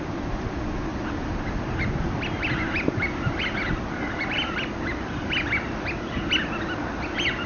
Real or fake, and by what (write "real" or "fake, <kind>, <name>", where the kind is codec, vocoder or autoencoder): real